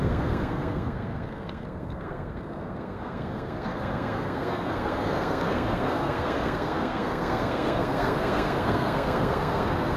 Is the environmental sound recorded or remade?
remade